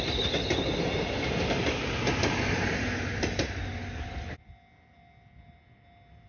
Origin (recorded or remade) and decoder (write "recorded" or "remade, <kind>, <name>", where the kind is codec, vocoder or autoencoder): recorded